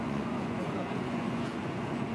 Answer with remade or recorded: remade